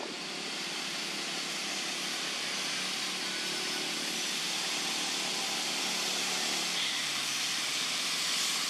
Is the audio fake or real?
real